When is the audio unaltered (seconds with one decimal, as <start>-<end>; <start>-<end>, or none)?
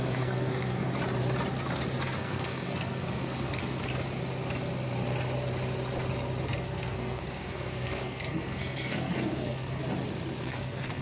0.9-2.0; 3.9-6.4; 9.8-10.4